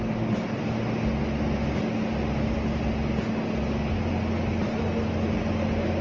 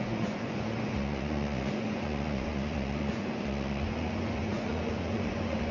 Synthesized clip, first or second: second